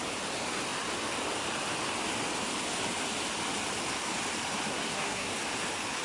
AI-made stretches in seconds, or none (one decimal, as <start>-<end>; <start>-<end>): 4.7-5.3